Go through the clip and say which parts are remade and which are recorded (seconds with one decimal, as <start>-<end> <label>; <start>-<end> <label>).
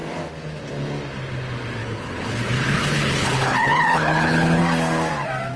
0.0-1.8 recorded; 1.8-4.6 remade; 4.6-5.6 recorded